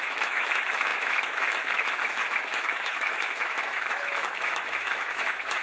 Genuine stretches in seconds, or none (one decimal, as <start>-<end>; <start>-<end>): none